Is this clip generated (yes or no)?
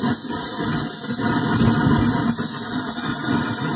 no